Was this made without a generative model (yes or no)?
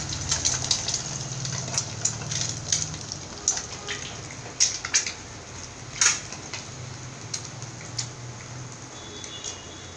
yes